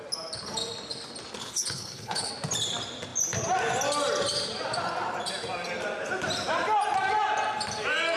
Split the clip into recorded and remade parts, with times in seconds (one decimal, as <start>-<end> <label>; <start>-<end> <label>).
0.0-1.4 recorded; 1.4-2.3 remade; 2.3-8.2 recorded